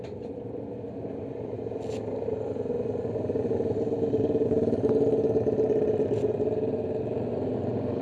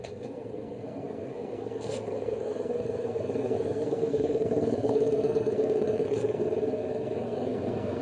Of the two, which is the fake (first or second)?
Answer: second